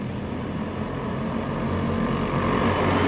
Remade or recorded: recorded